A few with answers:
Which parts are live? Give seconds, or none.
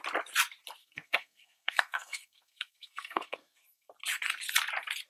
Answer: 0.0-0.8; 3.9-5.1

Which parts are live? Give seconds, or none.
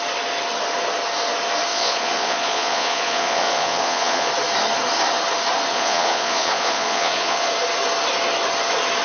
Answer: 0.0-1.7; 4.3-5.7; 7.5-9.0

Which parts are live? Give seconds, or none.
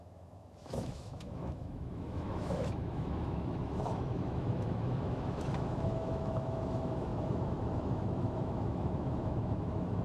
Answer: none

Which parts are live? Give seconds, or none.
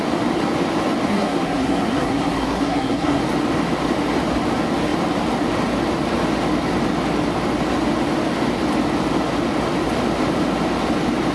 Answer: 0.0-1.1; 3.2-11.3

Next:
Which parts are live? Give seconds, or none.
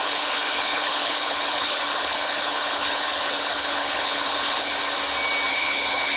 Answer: 4.7-5.5